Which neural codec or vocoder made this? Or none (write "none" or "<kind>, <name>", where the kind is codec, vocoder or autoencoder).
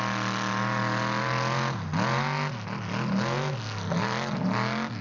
none